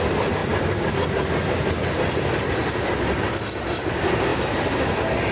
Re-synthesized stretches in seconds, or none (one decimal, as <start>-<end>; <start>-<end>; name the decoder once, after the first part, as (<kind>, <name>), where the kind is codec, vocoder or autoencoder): none